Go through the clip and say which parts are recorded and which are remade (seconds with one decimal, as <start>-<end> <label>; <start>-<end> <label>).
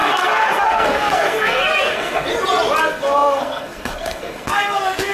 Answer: 0.0-2.3 remade; 2.3-2.8 recorded; 2.8-5.1 remade